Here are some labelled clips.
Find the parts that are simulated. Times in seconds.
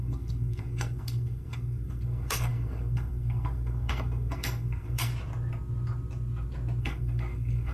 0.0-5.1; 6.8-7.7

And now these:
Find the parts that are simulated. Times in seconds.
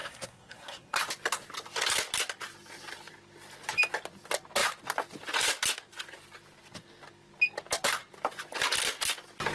0.0-1.0